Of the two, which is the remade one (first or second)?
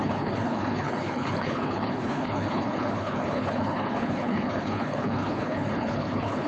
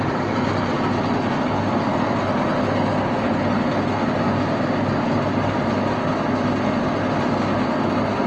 first